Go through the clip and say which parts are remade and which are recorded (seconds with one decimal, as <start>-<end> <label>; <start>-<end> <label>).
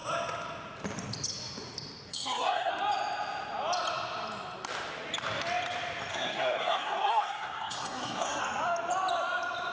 0.0-2.1 recorded; 2.1-2.7 remade; 2.7-6.1 recorded; 6.1-8.4 remade; 8.4-9.7 recorded